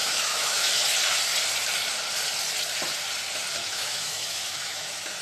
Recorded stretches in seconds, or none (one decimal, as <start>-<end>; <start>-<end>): 0.7-3.6

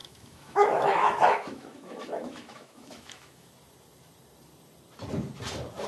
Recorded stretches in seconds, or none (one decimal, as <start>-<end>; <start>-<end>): 3.5-5.9